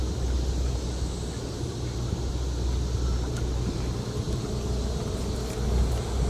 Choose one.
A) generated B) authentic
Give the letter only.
B